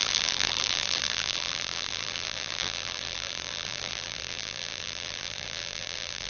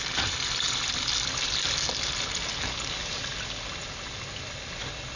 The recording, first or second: second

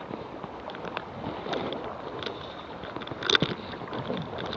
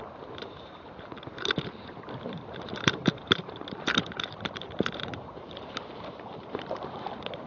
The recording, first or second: first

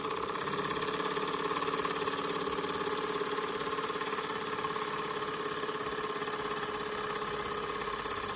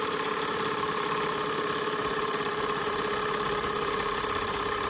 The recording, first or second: first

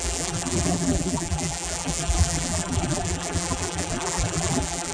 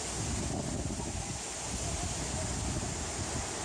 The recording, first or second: second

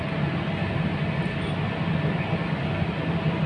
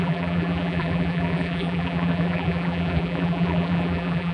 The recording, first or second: first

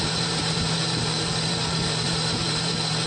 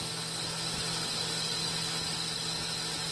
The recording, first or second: second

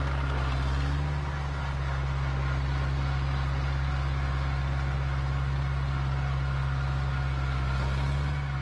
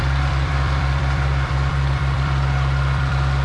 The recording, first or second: first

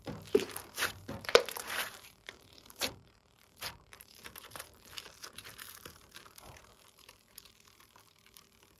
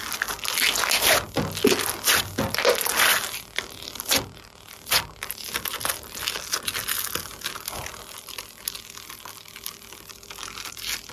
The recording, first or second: second